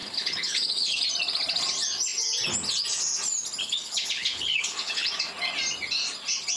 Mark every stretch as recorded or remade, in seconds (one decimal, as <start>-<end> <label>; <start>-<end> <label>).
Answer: 0.0-1.0 remade; 1.0-3.6 recorded; 3.6-5.1 remade; 5.1-6.6 recorded